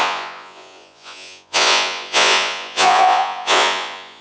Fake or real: fake